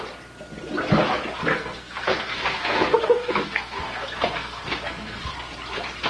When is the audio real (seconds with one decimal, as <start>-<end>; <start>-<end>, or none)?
0.0-1.5; 5.2-6.1